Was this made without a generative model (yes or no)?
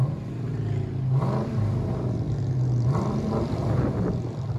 yes